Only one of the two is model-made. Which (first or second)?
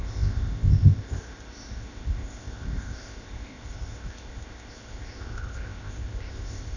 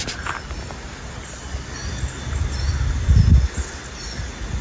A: first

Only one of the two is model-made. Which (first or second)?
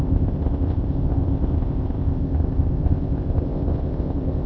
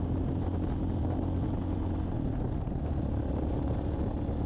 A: first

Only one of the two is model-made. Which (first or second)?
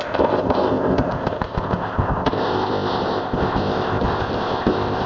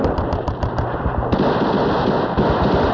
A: first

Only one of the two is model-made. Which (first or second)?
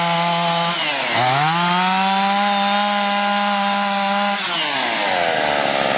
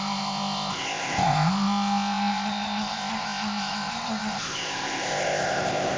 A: second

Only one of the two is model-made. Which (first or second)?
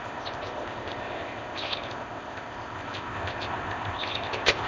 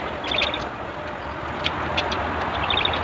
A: first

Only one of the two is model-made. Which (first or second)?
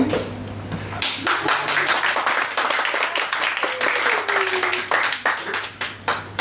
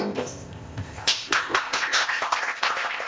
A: second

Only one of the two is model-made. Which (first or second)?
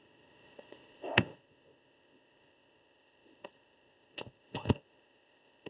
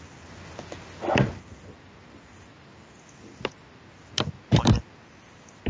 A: first